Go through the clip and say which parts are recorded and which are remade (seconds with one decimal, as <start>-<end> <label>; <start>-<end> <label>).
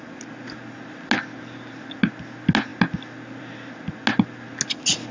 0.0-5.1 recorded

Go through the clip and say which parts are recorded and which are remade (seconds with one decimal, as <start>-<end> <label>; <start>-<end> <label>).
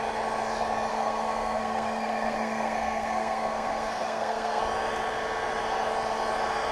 0.0-0.9 recorded; 0.9-4.6 remade; 4.6-6.7 recorded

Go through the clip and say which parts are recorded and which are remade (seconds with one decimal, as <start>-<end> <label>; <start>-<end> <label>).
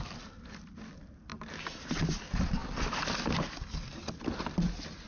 0.0-5.1 recorded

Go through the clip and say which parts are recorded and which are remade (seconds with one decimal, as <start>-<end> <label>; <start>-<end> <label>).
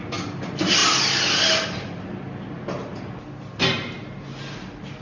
0.0-5.0 recorded